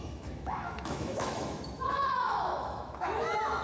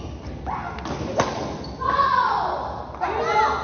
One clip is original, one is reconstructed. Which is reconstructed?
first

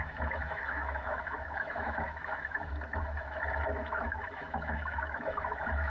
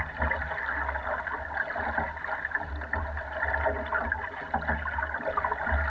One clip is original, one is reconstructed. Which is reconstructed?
first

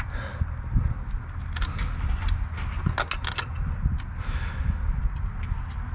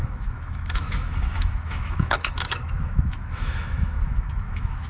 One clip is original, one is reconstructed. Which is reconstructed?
second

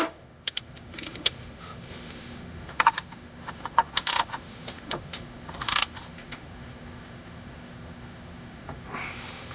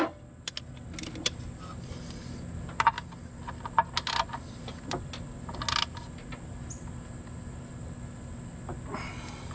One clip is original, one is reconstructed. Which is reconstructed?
first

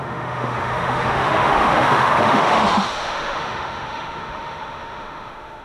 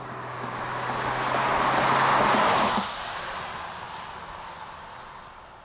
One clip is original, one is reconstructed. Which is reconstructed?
first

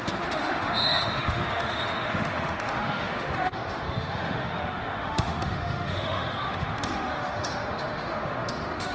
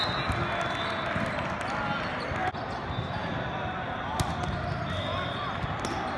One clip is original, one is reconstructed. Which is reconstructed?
first